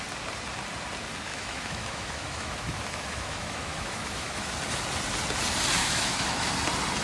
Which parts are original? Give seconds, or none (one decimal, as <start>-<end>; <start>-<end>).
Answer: 0.0-1.3; 4.5-5.8; 6.5-7.0